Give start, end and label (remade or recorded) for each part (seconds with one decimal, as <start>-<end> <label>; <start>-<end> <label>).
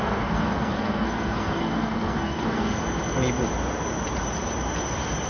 0.0-2.8 remade; 2.8-5.3 recorded